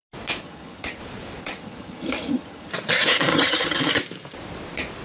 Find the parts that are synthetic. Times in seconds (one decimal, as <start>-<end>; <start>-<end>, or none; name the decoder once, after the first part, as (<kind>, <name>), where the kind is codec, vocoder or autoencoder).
0.4-1.0 (vocoder, HiFi-GAN); 1.4-2.7; 3.3-3.8